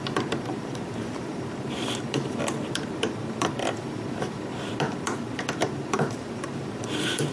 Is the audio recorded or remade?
remade